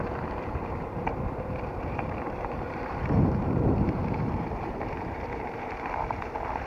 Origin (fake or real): fake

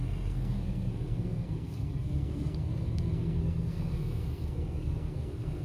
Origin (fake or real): fake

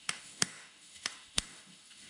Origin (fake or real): fake